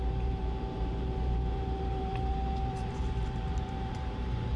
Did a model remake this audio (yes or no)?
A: yes